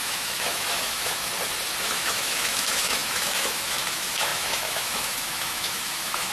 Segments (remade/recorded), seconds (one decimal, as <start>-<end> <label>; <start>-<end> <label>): 0.0-1.3 remade; 1.3-1.8 recorded; 1.8-6.3 remade